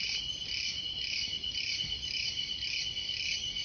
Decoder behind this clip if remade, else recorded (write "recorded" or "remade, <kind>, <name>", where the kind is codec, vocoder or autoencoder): recorded